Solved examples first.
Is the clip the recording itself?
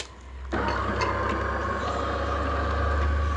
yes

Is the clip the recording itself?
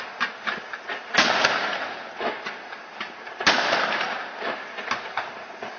yes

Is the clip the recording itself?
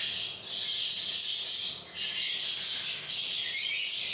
yes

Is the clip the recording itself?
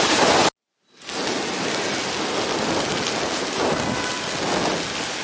yes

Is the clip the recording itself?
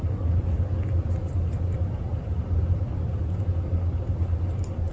yes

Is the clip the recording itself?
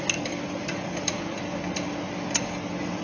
yes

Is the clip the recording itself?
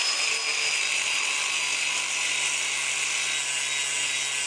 yes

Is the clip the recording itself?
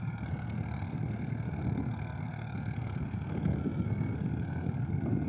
no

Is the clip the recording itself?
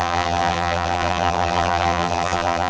no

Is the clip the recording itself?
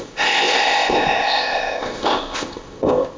no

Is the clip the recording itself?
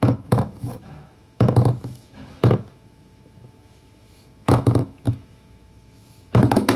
no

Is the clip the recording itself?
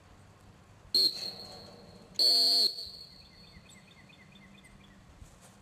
yes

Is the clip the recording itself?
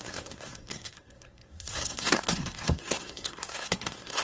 no